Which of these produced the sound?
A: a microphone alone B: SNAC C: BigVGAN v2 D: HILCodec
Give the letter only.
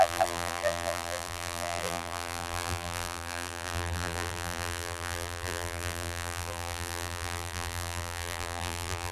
C